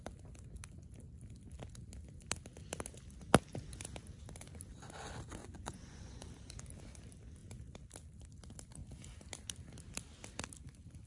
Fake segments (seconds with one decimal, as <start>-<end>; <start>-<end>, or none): 5.4-6.3